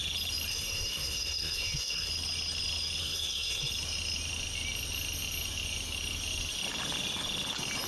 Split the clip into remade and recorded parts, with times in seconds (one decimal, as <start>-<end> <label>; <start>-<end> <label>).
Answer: 0.0-0.5 recorded; 0.5-2.1 remade; 2.1-3.0 recorded; 3.0-3.7 remade; 3.7-7.9 recorded